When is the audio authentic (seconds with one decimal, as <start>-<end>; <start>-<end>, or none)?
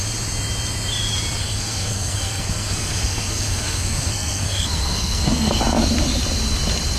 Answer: 0.0-1.4; 5.6-7.0